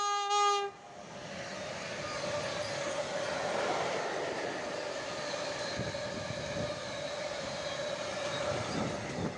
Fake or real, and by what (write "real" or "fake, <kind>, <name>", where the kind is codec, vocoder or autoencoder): real